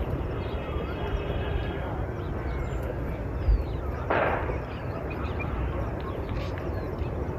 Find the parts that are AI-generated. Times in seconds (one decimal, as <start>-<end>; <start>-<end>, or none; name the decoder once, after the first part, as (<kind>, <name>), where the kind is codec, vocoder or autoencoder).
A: 0.0-1.6 (vocoder, BigVGAN v2); 4.8-7.4